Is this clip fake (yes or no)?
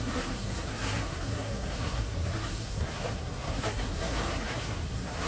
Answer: yes